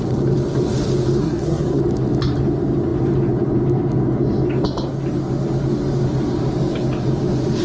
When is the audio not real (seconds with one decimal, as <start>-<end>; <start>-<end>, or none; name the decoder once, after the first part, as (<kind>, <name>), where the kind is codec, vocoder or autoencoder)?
1.2-1.8 (codec, SNAC)